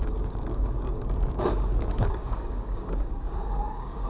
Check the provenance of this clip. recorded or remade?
remade